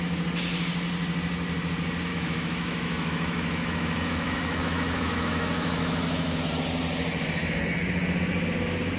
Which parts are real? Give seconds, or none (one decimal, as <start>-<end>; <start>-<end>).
0.0-2.1; 6.4-9.0